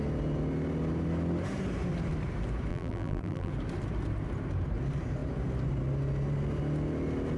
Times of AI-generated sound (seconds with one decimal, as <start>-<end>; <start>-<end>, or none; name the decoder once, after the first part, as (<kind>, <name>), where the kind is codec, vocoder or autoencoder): 2.7-3.5 (vocoder, BigVGAN v2)